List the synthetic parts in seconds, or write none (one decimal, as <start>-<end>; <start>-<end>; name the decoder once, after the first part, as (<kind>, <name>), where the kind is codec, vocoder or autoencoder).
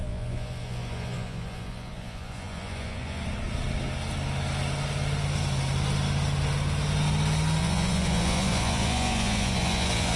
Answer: 0.0-3.2 (vocoder, Vocos); 7.6-10.2